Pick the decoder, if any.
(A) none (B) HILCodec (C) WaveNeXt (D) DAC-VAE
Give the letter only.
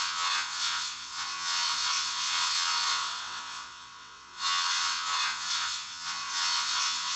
C